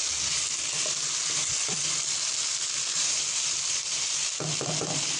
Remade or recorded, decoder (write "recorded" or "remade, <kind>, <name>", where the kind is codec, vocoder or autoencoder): remade, vocoder, BigVGAN v2